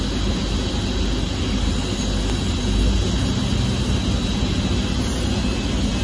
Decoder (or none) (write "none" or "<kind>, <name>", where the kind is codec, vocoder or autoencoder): none